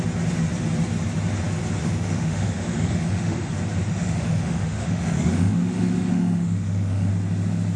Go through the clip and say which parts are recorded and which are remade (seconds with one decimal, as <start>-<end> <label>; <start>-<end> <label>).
0.0-1.8 recorded; 1.8-3.5 remade; 3.5-3.9 recorded; 3.9-7.1 remade; 7.1-7.8 recorded

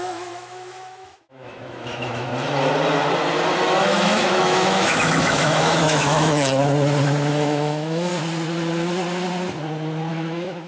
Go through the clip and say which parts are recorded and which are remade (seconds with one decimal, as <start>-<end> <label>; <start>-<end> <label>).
0.0-2.3 remade; 2.3-3.8 recorded; 3.8-6.6 remade; 6.6-7.3 recorded; 7.3-8.1 remade; 8.1-10.1 recorded; 10.1-10.7 remade